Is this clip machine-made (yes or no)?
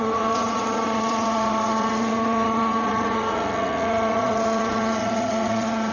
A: yes